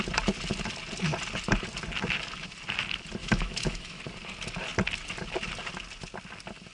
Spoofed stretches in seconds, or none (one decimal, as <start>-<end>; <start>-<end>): 3.2-4.0